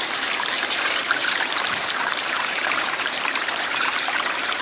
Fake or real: fake